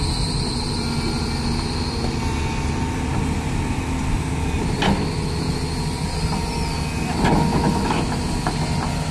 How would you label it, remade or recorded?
recorded